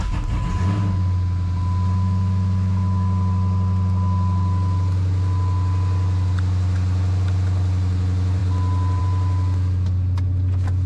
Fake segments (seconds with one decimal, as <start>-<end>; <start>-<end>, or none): none